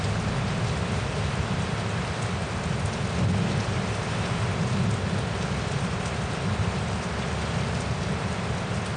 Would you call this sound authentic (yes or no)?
yes